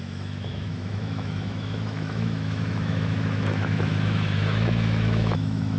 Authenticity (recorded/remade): remade